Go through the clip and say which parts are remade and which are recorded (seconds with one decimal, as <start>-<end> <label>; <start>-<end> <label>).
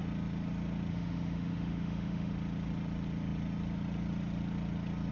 0.0-0.9 recorded; 0.9-2.3 remade; 2.3-5.1 recorded